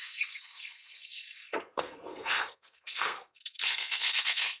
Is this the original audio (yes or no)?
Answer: no